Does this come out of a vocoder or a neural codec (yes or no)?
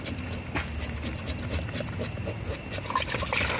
no